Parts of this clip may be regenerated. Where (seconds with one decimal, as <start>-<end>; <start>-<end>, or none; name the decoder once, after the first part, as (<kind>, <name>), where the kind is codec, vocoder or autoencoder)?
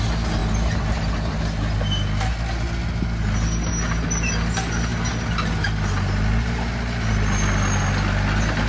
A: none